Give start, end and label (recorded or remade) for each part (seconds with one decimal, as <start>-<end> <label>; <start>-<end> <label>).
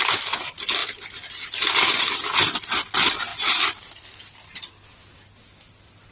0.0-6.1 recorded